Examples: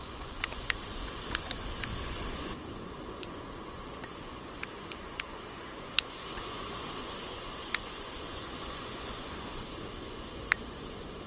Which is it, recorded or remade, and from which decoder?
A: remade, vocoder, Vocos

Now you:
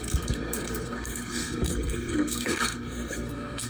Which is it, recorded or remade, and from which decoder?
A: remade, codec, SNAC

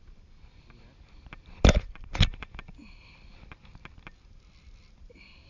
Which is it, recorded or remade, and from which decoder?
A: recorded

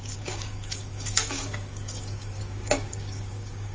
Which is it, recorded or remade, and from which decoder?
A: remade, codec, DAC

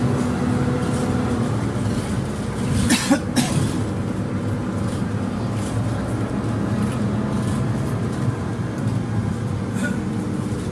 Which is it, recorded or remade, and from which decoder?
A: recorded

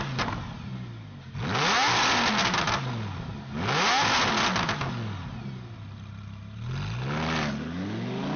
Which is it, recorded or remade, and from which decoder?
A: recorded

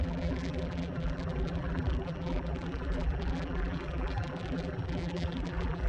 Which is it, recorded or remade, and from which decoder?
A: remade, vocoder, BigVGAN v2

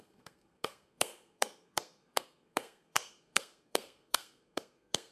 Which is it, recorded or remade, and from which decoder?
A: remade, codec, SNAC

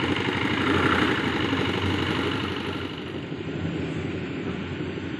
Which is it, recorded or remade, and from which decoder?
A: recorded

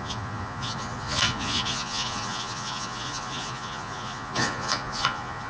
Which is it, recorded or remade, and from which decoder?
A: remade, vocoder, Vocos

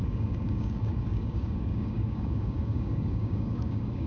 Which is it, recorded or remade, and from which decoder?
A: remade, codec, DAC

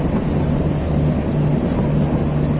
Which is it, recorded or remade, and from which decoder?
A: recorded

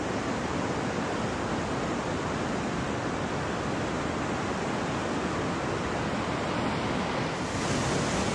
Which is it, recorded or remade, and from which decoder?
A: recorded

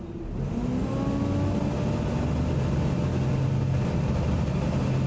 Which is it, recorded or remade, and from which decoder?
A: recorded